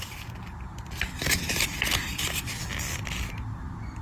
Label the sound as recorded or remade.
recorded